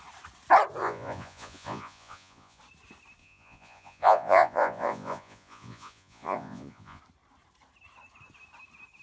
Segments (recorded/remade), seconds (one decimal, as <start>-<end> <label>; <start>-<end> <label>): 0.0-0.8 recorded; 0.8-2.6 remade; 2.6-3.2 recorded; 3.2-7.0 remade; 7.0-9.0 recorded